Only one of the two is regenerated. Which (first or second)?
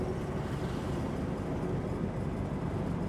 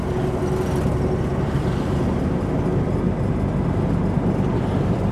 first